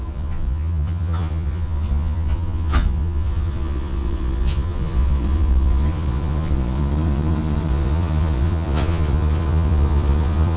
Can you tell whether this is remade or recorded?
remade